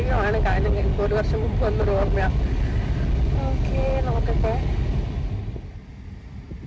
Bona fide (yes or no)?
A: yes